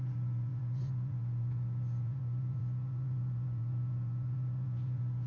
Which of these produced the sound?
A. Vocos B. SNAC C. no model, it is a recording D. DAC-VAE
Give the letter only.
A